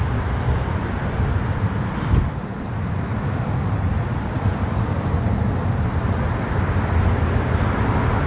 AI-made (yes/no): no